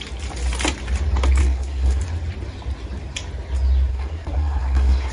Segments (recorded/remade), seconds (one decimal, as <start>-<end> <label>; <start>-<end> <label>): 0.0-1.4 recorded; 1.4-2.0 remade; 2.0-3.9 recorded; 3.9-5.1 remade